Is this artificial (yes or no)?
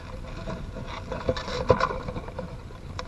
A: yes